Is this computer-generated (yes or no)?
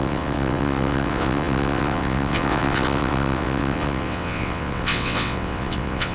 yes